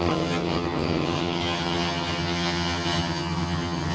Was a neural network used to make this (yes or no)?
yes